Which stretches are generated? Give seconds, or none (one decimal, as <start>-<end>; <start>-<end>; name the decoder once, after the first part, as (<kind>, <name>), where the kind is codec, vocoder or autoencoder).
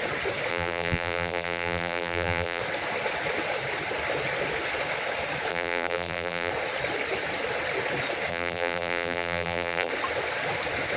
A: 0.5-2.6 (vocoder, BigVGAN v2); 5.5-6.5; 8.3-9.9